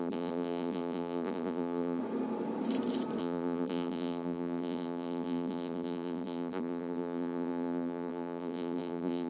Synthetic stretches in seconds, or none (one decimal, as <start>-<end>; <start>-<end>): 0.0-2.0; 3.2-9.3